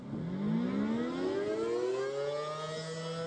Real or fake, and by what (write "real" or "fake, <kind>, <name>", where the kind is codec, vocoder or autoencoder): real